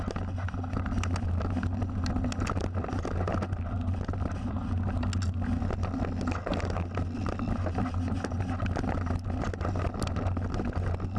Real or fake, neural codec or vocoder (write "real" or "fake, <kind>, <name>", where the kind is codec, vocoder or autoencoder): real